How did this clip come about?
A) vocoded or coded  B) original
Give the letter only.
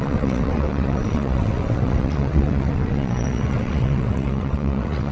A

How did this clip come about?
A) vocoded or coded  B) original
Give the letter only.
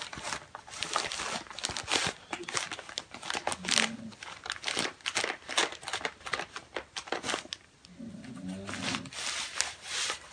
B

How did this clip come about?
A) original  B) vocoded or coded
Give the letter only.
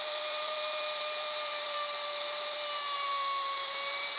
B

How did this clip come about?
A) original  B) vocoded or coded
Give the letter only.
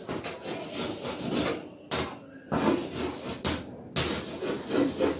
A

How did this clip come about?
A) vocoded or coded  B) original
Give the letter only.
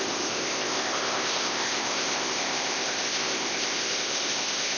A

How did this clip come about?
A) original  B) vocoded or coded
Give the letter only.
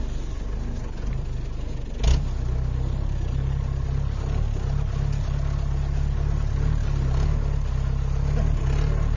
A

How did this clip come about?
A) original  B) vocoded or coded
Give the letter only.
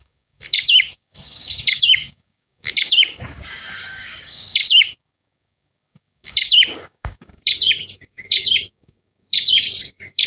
B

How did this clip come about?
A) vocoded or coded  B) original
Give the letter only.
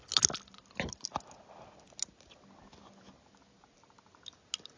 B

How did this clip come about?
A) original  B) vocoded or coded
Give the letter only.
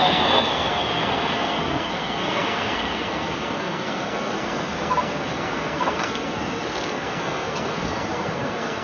B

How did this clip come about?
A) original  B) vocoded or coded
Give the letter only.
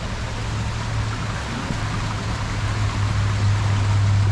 A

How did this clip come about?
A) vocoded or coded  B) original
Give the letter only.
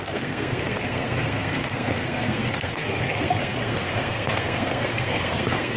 A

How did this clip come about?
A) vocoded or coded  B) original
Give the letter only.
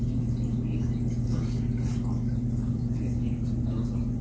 B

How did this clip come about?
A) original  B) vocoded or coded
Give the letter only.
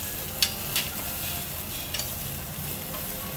A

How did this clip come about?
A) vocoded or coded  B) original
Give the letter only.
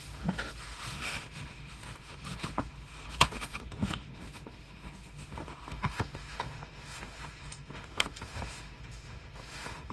A